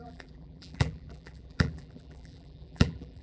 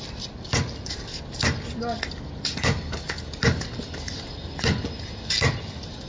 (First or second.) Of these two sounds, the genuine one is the second